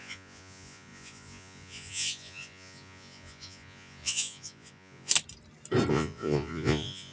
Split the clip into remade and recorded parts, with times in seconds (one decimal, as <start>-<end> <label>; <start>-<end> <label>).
0.0-5.1 remade; 5.1-5.9 recorded; 5.9-7.1 remade